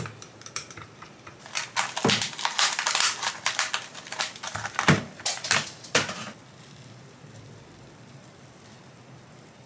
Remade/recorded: remade